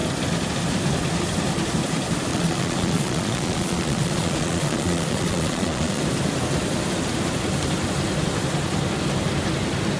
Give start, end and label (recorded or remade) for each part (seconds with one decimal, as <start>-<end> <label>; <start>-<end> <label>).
0.0-2.3 recorded; 2.3-6.0 remade; 6.0-10.0 recorded